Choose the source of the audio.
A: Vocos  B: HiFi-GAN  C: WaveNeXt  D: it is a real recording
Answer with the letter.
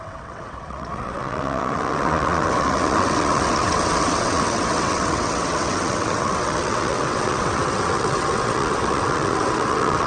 C